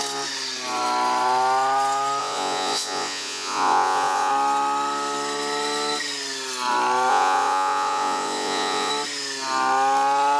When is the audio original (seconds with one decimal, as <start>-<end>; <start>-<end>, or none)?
0.0-2.2; 4.3-7.1; 8.9-10.4